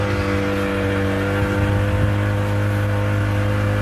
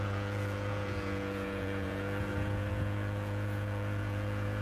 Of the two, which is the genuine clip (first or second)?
first